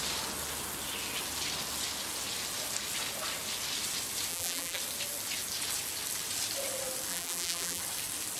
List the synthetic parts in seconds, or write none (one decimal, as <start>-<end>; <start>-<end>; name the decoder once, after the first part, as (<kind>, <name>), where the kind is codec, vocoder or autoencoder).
4.3-4.8 (vocoder, BigVGAN v2); 7.1-7.8